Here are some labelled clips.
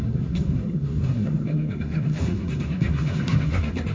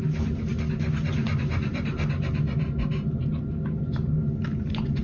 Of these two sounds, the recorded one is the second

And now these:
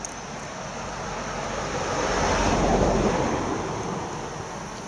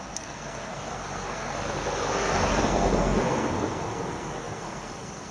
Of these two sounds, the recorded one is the first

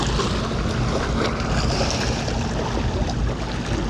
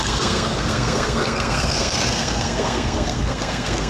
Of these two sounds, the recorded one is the first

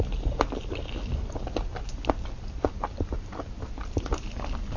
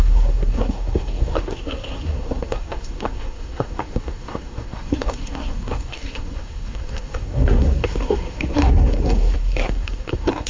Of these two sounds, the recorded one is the first